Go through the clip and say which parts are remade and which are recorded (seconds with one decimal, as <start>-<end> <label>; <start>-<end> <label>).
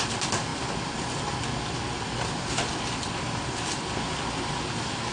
0.0-5.1 recorded